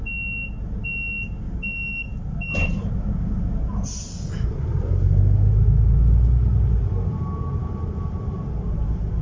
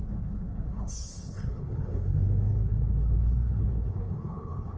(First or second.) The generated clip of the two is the second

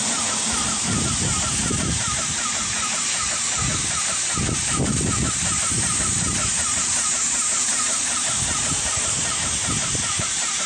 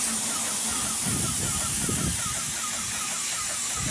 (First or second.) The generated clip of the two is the first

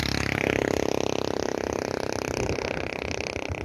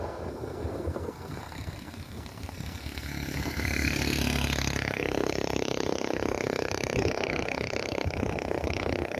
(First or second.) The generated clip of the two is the second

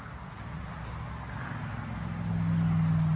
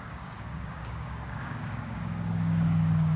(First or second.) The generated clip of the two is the second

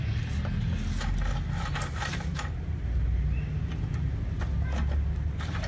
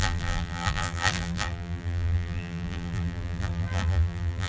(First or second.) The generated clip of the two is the second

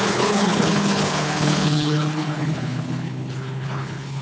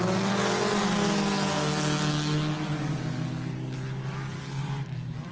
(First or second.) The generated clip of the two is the first